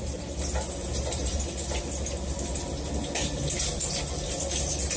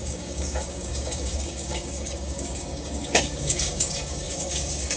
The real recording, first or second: first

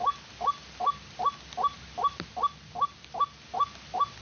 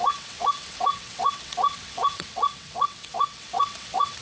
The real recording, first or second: first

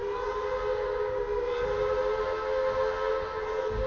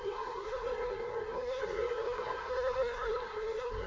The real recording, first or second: first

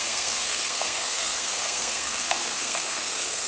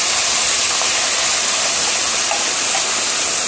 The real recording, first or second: second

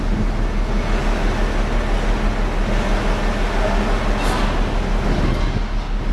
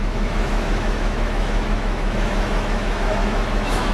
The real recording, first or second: first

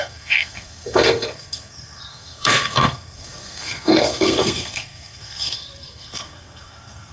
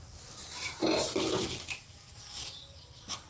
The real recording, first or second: second